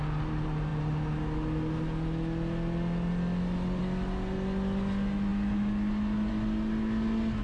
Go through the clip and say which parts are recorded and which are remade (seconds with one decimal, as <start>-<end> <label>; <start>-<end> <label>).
0.0-7.4 recorded